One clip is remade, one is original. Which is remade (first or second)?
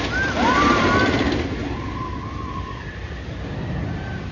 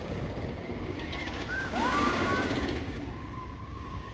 second